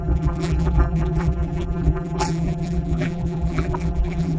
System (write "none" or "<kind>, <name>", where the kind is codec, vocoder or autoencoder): vocoder, BigVGAN v2